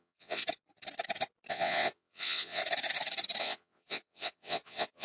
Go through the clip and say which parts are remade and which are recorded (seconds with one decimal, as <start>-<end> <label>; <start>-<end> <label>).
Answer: 0.0-0.4 remade; 0.4-1.5 recorded; 1.5-2.6 remade; 2.6-3.4 recorded; 3.4-5.0 remade

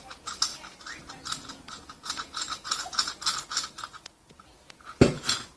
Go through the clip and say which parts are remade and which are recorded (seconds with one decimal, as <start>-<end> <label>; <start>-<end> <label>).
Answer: 0.0-0.5 remade; 0.5-1.0 recorded; 1.0-5.6 remade